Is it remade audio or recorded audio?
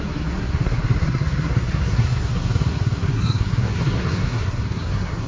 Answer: remade